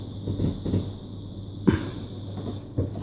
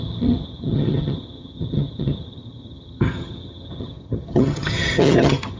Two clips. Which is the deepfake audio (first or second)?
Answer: second